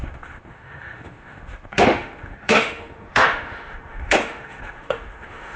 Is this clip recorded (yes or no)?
no